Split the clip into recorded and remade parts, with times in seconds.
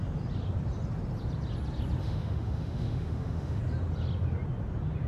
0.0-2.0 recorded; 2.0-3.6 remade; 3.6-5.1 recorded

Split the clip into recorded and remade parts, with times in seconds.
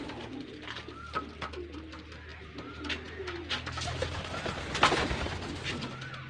0.0-6.3 recorded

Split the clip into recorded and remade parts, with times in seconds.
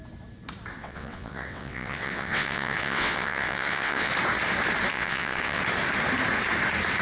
0.0-0.8 recorded; 0.8-4.1 remade; 4.1-4.9 recorded; 4.9-5.6 remade; 5.6-7.0 recorded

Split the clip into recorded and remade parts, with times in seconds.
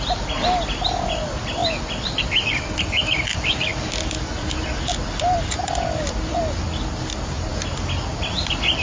0.0-7.5 remade; 7.5-8.1 recorded; 8.1-8.8 remade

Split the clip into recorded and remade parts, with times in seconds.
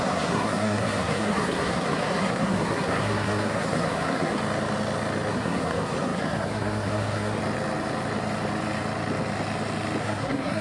0.0-4.4 remade; 4.4-5.3 recorded; 5.3-7.4 remade; 7.4-10.0 recorded; 10.0-10.6 remade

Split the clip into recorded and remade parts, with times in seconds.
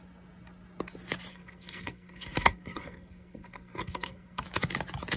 0.0-1.3 recorded; 1.3-4.4 remade; 4.4-5.2 recorded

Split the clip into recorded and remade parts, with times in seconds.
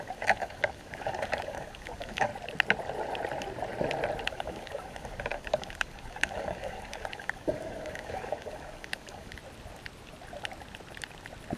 0.0-2.3 remade; 2.3-4.3 recorded; 4.3-9.4 remade; 9.4-11.6 recorded